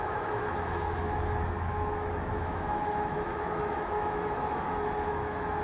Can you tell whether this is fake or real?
fake